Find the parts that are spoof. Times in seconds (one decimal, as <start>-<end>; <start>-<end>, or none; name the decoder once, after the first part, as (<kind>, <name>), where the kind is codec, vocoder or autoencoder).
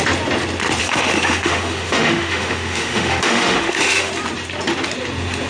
0.8-4.1 (autoencoder, DAC-VAE)